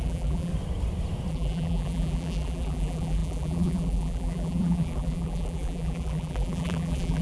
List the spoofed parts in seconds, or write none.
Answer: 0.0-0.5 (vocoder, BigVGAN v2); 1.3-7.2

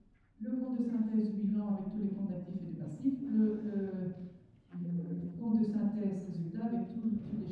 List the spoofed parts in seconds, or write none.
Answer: 4.7-5.4 (vocoder, BigVGAN v2)

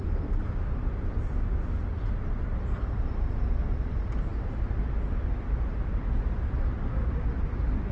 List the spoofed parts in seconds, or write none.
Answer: none

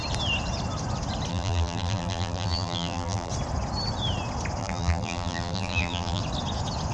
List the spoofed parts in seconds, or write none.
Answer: 1.3-3.3 (vocoder, BigVGAN v2); 4.6-6.2

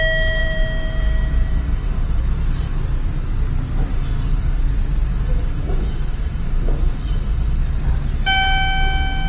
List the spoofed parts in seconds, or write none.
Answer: 0.4-2.2 (vocoder, BigVGAN v2); 3.9-4.6; 5.1-7.6

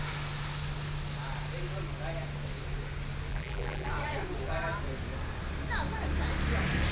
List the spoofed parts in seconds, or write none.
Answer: 3.3-3.9 (vocoder, BigVGAN v2)

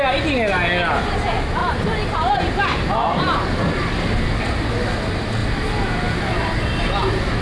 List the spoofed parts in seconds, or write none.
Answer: none